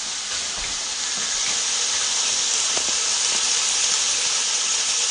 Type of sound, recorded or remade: remade